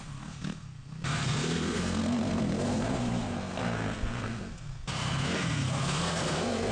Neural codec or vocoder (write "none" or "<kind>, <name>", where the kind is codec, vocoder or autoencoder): codec, SNAC